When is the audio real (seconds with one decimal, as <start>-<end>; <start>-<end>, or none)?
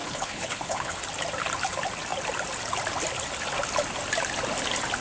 1.0-5.0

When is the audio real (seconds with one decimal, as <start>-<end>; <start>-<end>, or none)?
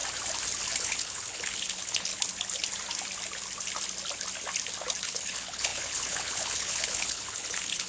0.0-0.8; 2.1-5.0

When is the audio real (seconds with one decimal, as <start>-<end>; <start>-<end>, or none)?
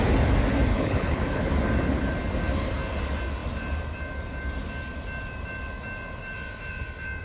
0.0-0.7; 1.5-7.2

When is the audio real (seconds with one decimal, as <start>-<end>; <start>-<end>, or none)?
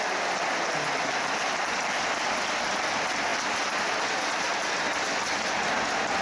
0.0-6.2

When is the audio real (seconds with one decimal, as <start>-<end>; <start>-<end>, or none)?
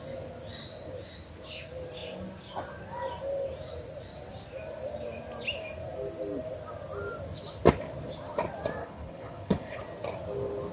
0.0-8.8; 9.8-10.7